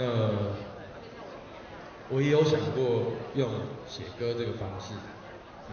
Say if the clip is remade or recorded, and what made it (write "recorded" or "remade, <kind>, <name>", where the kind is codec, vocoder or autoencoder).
recorded